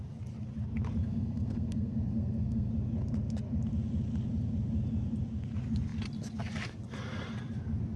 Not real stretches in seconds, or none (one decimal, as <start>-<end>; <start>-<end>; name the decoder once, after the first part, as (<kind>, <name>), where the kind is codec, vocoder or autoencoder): 1.0-2.7 (codec, SNAC)